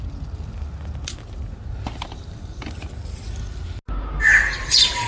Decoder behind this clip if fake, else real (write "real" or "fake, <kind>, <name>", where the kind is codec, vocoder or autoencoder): real